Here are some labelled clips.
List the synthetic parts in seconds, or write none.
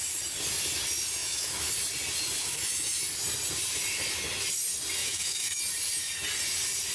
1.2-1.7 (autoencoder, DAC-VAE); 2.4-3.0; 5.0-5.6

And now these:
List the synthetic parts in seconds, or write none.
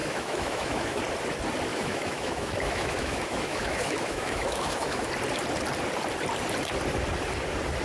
0.0-1.0 (autoencoder, DAC-VAE); 1.7-5.1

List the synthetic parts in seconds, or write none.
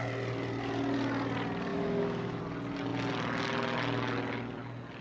1.7-2.4 (autoencoder, DAC-VAE)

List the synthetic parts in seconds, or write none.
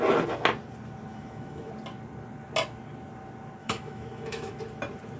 1.1-1.7 (autoencoder, DAC-VAE); 3.6-4.6